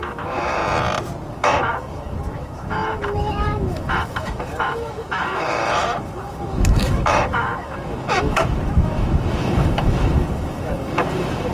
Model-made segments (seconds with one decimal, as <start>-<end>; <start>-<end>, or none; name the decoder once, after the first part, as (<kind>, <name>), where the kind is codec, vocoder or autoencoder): 0.0-0.6 (autoencoder, DAC-VAE); 1.3-11.5